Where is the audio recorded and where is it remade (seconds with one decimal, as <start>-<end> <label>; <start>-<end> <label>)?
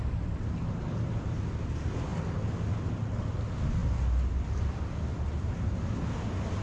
0.0-6.6 recorded